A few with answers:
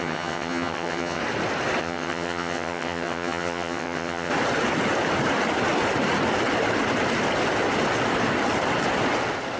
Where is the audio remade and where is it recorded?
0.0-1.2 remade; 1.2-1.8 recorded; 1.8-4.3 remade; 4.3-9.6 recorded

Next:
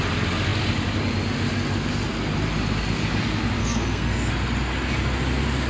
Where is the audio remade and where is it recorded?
0.0-3.6 recorded; 3.6-4.3 remade; 4.3-5.7 recorded